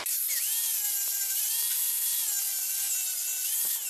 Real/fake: real